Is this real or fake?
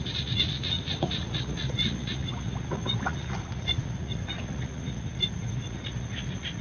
fake